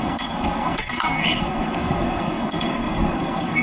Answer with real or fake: fake